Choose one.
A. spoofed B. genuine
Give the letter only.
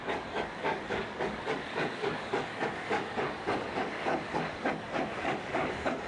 A